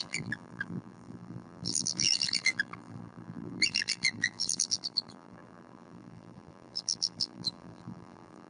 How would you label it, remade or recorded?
remade